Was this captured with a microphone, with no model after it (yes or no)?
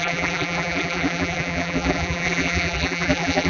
no